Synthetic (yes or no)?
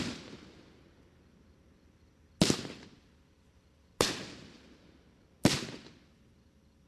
no